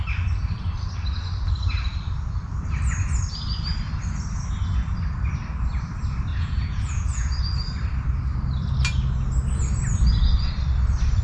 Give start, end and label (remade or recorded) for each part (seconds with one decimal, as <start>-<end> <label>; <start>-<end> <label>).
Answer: 0.0-6.3 recorded; 6.3-7.4 remade; 7.4-11.2 recorded